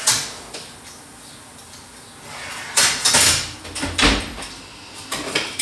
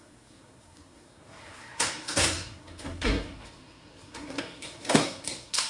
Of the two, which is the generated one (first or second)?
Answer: second